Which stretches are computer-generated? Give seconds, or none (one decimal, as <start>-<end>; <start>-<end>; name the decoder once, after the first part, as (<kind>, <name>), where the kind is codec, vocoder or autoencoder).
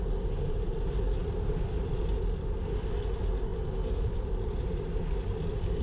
none